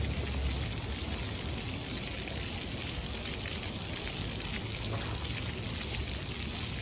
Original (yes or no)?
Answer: yes